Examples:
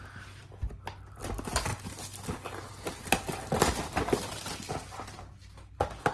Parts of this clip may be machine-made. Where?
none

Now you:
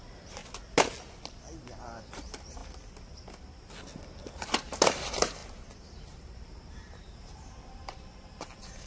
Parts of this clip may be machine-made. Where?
0.0-0.4 (vocoder, BigVGAN v2); 1.6-2.6; 4.2-8.9

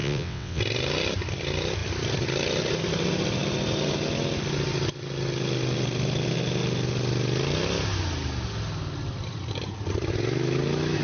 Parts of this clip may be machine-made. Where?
0.0-0.6 (vocoder, WaveNeXt)

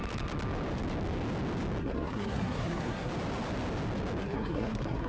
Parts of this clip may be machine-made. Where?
1.8-3.1 (codec, SNAC); 4.2-5.1